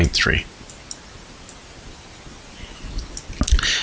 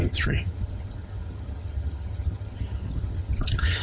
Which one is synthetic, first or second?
second